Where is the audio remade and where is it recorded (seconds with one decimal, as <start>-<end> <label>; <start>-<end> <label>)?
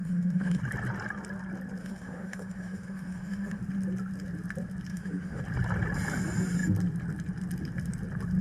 0.0-0.6 remade; 0.6-1.8 recorded; 1.8-3.6 remade; 3.6-4.9 recorded; 4.9-5.4 remade; 5.4-8.4 recorded